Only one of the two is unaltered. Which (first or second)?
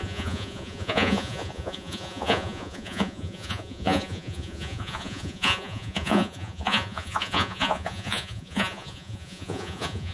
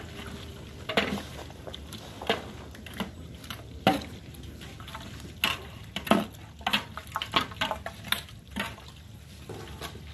second